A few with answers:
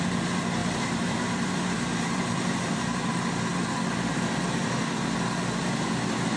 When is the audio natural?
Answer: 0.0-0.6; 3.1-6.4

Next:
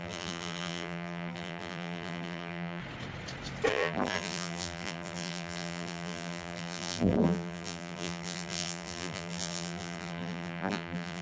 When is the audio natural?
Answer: 2.8-3.7

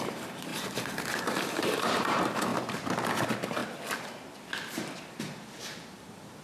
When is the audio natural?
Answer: 0.5-1.2; 2.5-3.1; 3.6-5.1

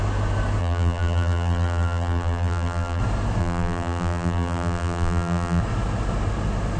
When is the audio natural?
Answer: 0.0-0.6; 3.0-3.4; 5.6-6.8

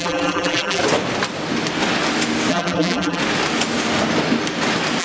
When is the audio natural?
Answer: 0.8-2.5; 3.2-5.0